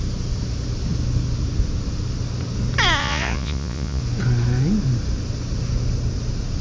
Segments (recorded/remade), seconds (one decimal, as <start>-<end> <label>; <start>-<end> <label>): 0.0-3.0 recorded; 3.0-4.0 remade; 4.0-6.6 recorded

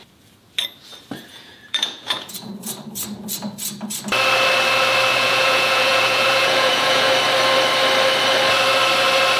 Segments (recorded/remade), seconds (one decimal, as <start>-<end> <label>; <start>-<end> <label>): 0.0-1.3 recorded; 1.3-2.6 remade; 2.6-5.1 recorded; 5.1-7.1 remade; 7.1-9.4 recorded

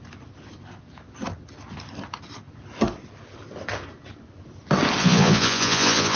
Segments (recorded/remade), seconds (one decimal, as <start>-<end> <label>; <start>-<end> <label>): 0.0-5.0 recorded; 5.0-6.2 remade

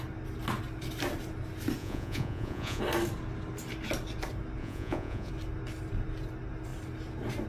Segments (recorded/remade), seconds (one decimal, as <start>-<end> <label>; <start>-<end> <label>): 0.0-1.8 recorded; 1.8-2.8 remade; 2.8-4.6 recorded; 4.6-5.3 remade; 5.3-7.5 recorded

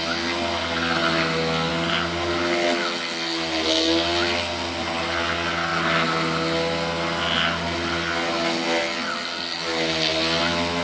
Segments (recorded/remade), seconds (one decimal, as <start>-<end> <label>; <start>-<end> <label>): 0.0-10.8 recorded

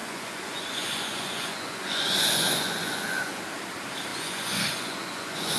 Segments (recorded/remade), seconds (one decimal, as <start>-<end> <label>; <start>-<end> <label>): 0.0-3.4 remade; 3.4-4.1 recorded; 4.1-5.6 remade

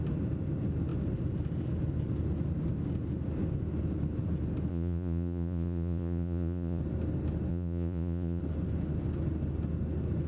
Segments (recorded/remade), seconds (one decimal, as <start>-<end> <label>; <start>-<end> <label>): 0.0-4.7 recorded; 4.7-6.8 remade; 6.8-7.5 recorded; 7.5-8.4 remade; 8.4-10.3 recorded

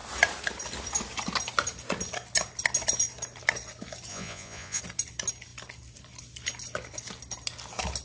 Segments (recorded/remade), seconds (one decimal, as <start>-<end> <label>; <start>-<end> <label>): 0.0-4.1 recorded; 4.1-4.8 remade; 4.8-8.0 recorded